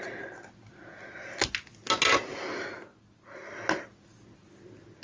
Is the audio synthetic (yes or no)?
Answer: no